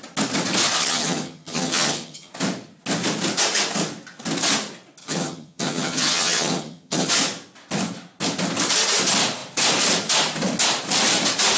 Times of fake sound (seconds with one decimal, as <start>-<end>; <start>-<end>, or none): 0.8-2.3; 5.0-7.1